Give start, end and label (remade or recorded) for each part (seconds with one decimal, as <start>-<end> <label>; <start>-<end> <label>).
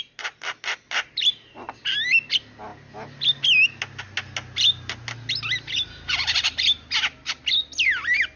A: 0.0-8.4 recorded